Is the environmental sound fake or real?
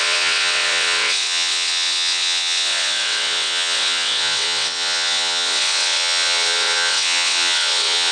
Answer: fake